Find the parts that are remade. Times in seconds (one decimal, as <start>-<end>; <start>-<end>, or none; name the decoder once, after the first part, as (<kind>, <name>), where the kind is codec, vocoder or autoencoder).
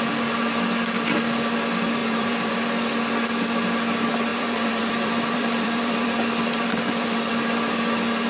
2.0-2.5 (vocoder, BigVGAN v2); 4.3-7.3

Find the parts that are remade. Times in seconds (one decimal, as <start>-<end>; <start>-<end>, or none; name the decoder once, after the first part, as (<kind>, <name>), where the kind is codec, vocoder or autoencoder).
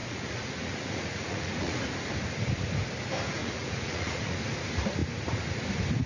0.0-1.8 (vocoder, Vocos); 3.4-4.4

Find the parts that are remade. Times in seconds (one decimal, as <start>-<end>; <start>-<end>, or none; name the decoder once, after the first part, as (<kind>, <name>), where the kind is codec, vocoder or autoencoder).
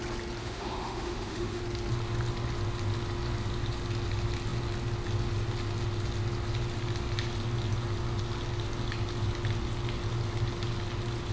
0.4-1.6 (autoencoder, DAC-VAE)